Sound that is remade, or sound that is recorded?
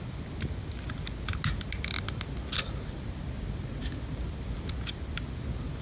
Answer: recorded